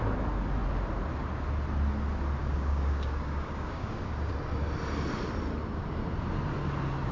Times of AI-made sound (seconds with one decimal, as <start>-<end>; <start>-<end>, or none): 2.4-4.3